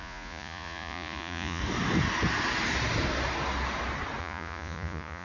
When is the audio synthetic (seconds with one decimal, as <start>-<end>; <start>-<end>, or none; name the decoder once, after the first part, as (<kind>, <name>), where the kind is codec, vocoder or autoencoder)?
0.0-1.6 (vocoder, Vocos); 4.2-5.2